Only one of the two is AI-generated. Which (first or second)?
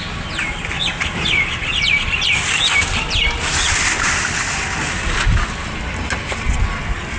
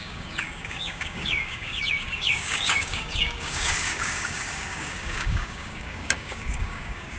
second